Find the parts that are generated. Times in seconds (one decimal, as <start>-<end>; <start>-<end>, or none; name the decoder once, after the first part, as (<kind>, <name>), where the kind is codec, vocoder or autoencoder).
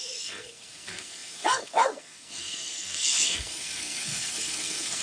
0.0-5.0 (codec, SNAC)